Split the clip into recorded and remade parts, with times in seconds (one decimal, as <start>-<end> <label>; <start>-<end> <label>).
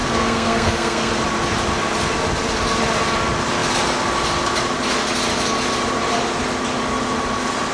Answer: 0.0-1.1 remade; 1.1-7.7 recorded